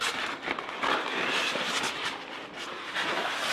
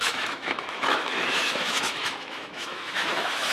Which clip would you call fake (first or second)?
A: second